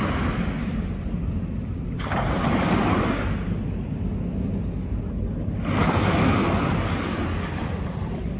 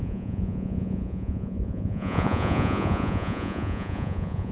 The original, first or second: first